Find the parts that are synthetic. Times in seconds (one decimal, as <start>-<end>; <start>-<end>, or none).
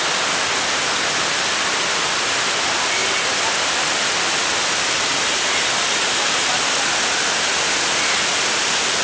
none